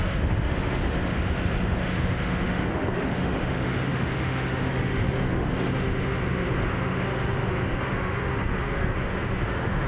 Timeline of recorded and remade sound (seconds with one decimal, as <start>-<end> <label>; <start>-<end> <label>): 0.0-9.9 remade